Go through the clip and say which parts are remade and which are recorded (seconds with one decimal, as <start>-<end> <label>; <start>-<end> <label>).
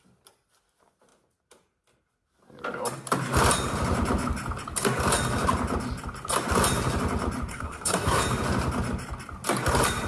0.0-7.5 recorded; 7.5-8.2 remade; 8.2-10.1 recorded